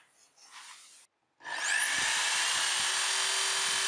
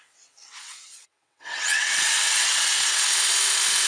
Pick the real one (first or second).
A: first